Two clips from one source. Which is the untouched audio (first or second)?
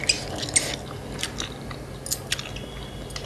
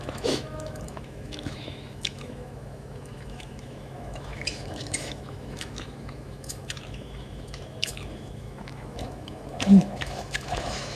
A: first